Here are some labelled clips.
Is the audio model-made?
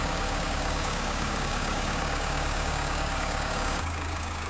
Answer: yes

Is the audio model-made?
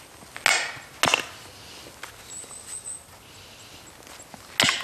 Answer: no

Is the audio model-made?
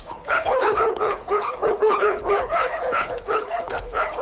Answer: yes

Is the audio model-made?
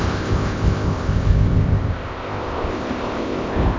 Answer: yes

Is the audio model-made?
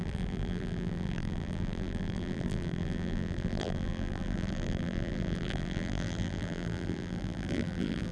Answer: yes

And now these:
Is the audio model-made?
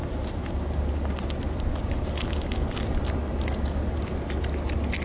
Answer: no